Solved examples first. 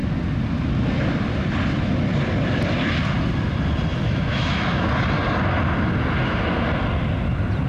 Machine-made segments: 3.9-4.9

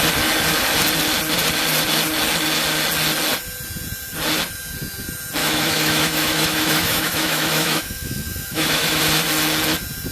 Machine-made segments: 5.4-9.0

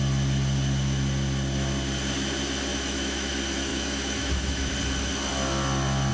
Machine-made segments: 2.7-3.3; 3.7-4.7

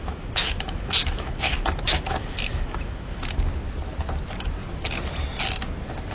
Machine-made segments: 0.0-3.3